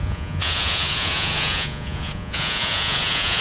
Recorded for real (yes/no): no